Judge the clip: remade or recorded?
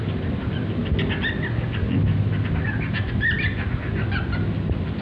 recorded